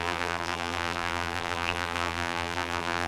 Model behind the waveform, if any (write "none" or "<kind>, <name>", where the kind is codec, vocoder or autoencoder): vocoder, BigVGAN v2